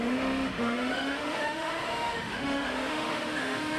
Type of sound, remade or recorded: remade